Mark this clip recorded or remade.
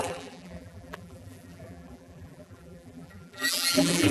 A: remade